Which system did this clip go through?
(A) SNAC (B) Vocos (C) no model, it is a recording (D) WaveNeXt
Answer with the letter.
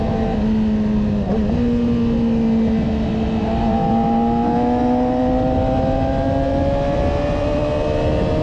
C